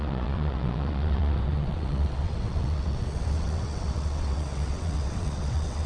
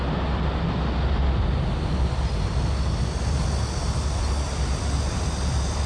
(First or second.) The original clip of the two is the second